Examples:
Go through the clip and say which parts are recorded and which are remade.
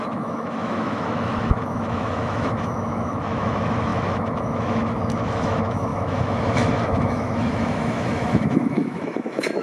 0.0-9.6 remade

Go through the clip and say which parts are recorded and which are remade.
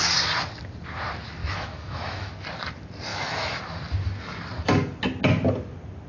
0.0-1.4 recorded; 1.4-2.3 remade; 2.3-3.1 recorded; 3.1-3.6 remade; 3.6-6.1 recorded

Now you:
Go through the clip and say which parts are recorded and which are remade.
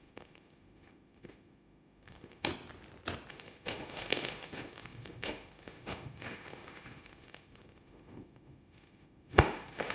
0.0-2.5 remade; 2.5-3.3 recorded; 3.3-9.9 remade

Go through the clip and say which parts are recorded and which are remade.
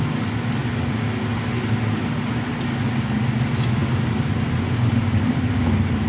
0.0-6.1 recorded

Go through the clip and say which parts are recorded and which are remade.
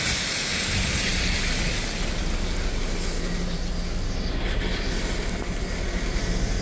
0.0-6.6 recorded